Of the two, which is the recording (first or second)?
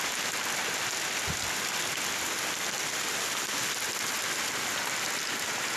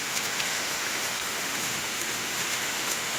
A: first